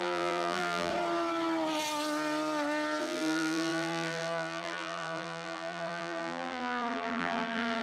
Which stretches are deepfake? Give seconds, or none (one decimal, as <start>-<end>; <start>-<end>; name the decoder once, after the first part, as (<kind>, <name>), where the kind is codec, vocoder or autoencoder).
0.0-0.9 (vocoder, BigVGAN v2); 3.0-7.8